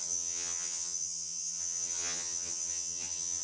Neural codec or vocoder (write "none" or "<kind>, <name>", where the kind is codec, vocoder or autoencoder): vocoder, HiFi-GAN